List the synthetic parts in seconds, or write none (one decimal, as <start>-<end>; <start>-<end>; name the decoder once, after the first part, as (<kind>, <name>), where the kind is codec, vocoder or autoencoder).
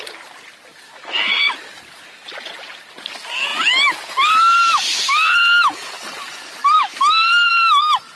6.6-7.5 (vocoder, BigVGAN v2)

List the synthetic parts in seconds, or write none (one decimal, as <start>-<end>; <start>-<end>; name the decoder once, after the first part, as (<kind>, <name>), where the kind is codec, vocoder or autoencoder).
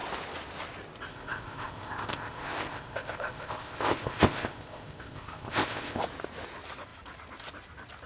1.1-6.0 (codec, ZipCodec)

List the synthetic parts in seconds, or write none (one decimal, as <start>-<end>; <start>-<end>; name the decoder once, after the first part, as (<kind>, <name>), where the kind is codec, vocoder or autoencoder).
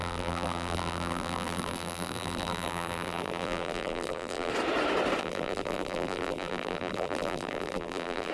0.0-4.5 (vocoder, BigVGAN v2); 5.2-8.3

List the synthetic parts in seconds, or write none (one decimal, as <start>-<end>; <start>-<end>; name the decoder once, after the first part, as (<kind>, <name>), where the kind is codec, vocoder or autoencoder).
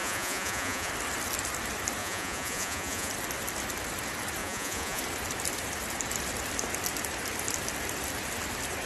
0.0-0.9 (vocoder, Vocos); 2.0-3.1; 4.4-5.0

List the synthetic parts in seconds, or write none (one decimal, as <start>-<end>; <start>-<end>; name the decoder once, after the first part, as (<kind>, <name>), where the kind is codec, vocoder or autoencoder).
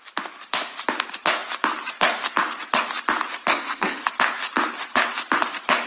3.5-4.0 (codec, SNAC)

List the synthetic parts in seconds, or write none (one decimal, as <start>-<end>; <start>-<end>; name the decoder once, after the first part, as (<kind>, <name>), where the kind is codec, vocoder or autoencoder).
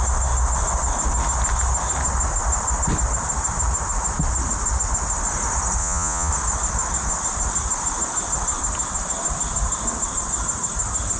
5.8-6.3 (vocoder, Vocos)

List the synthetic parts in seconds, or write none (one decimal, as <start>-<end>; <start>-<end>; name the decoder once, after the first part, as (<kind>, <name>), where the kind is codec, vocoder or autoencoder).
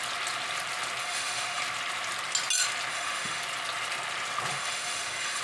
1.0-1.6 (autoencoder, DAC-VAE); 2.9-3.4; 4.5-5.4